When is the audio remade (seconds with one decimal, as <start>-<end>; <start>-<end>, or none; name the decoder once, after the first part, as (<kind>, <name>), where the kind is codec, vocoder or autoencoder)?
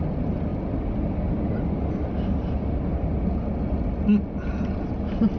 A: none